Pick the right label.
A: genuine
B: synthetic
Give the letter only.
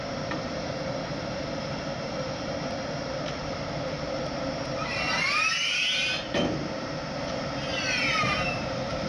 B